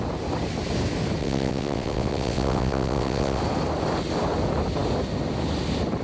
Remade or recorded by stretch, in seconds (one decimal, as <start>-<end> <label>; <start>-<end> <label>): 0.0-1.2 recorded; 1.2-3.4 remade; 3.4-6.0 recorded